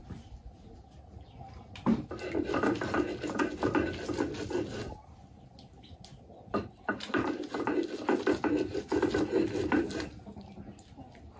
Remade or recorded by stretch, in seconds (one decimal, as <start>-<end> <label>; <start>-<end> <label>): 0.0-11.4 recorded